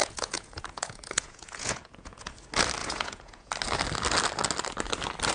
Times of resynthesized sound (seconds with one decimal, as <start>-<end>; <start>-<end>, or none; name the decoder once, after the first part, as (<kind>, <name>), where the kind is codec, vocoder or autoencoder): 0.0-2.3 (vocoder, Vocos); 2.8-3.5